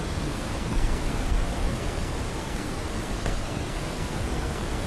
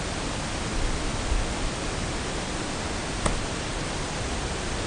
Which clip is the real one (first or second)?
second